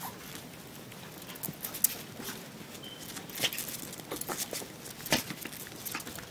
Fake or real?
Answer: real